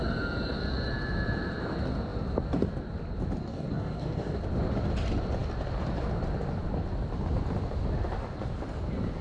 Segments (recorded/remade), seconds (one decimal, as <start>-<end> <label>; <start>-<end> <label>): 0.0-3.4 recorded; 3.4-4.4 remade; 4.4-9.2 recorded